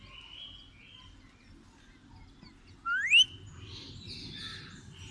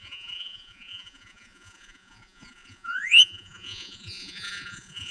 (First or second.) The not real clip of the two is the second